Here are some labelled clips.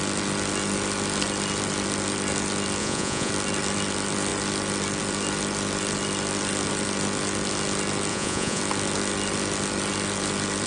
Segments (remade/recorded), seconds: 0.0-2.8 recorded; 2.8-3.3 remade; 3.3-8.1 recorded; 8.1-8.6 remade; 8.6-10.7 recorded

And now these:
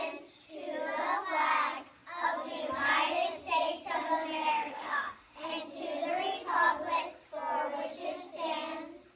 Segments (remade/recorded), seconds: 0.0-4.5 recorded; 4.5-5.5 remade; 5.5-9.2 recorded

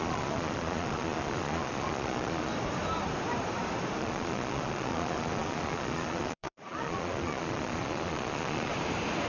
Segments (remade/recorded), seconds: 0.0-2.5 remade; 2.5-4.0 recorded; 4.0-8.7 remade; 8.7-9.3 recorded

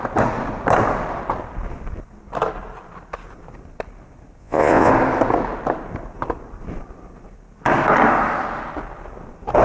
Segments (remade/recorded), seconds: 0.0-4.4 recorded; 4.4-4.9 remade; 4.9-9.6 recorded